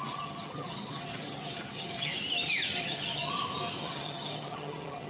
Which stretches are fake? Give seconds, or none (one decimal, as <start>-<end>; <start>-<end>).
0.0-2.1; 2.8-3.3; 3.8-5.1